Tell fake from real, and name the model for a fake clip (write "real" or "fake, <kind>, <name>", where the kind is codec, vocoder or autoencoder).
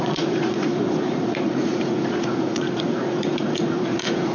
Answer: fake, vocoder, Vocos